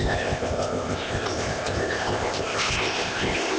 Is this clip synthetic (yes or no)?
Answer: yes